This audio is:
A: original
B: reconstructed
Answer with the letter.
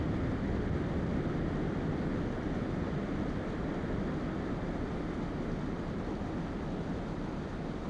A